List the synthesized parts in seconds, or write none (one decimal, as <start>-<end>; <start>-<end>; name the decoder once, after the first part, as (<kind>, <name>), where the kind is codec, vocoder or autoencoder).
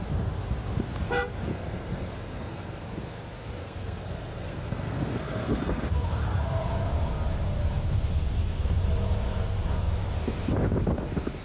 1.5-2.8 (codec, SNAC); 3.6-5.8